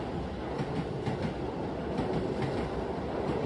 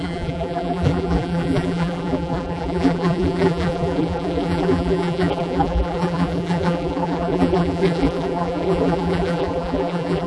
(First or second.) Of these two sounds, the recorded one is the first